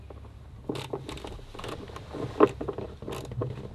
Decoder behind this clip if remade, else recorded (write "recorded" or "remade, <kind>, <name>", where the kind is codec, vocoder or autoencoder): recorded